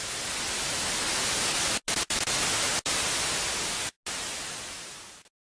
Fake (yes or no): no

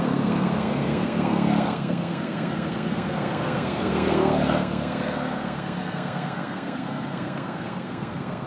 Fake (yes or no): yes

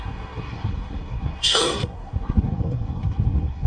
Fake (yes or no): yes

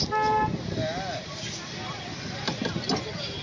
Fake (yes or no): no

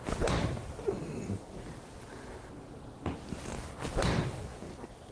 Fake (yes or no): no